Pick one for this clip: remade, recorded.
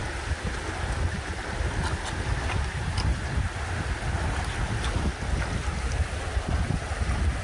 recorded